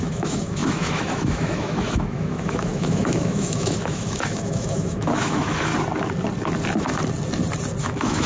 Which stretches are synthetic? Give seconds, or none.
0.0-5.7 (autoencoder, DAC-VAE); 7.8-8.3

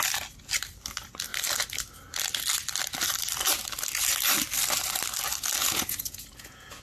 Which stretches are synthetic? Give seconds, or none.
5.6-6.8 (vocoder, Vocos)

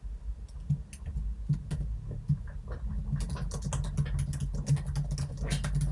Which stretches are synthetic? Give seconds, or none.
none

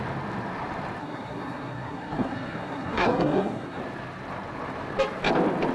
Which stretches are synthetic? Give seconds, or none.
1.0-3.8 (codec, SNAC)